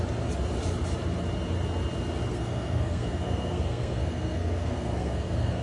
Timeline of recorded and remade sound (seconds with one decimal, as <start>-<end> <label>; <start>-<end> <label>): 0.0-2.3 recorded; 2.3-5.6 remade